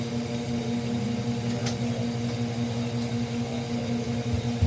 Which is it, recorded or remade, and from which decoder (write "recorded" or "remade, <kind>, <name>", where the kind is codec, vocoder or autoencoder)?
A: recorded